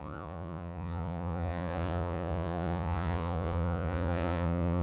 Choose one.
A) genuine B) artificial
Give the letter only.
B